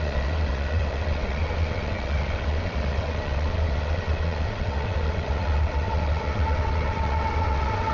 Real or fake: fake